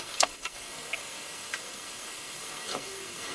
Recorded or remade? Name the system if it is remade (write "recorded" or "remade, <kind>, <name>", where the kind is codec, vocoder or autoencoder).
remade, codec, SNAC